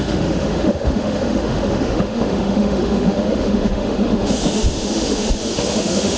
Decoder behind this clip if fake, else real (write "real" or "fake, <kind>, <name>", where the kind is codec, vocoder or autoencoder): fake, autoencoder, DAC-VAE